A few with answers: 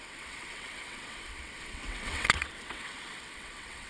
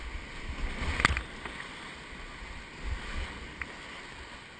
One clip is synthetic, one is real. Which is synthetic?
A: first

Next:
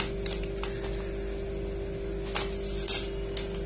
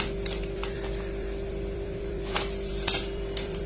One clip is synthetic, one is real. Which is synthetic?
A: second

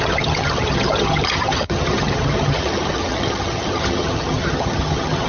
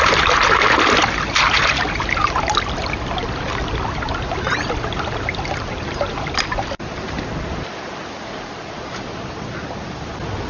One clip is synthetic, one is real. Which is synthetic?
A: first